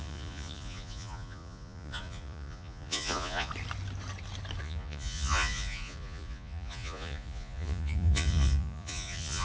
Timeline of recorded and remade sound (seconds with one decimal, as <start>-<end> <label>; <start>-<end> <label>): 0.0-3.5 remade; 3.5-4.6 recorded; 4.6-9.4 remade